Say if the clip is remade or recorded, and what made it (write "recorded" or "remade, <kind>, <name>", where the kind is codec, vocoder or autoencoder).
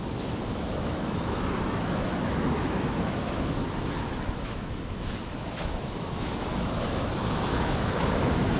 remade, autoencoder, DAC-VAE